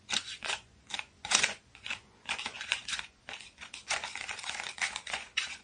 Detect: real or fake fake